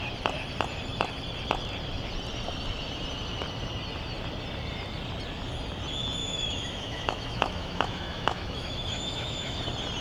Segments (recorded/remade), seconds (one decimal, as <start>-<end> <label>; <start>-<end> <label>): 0.0-6.2 recorded; 6.2-9.6 remade; 9.6-10.0 recorded